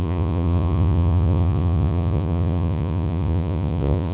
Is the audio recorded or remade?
remade